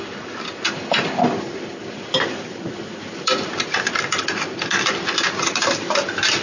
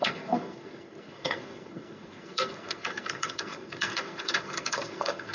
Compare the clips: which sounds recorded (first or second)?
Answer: first